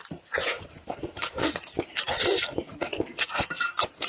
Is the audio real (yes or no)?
no